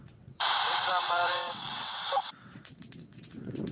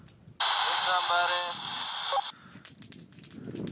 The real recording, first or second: second